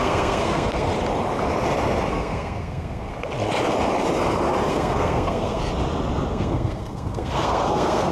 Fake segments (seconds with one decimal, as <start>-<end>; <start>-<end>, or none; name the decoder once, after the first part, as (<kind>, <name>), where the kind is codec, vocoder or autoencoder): 0.0-0.9 (codec, SNAC); 2.1-3.1; 4.7-5.6; 6.3-8.1